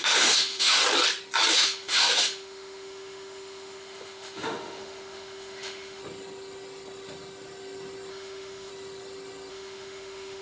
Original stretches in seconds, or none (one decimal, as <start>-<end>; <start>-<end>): 0.8-1.5; 6.0-8.1; 8.7-9.5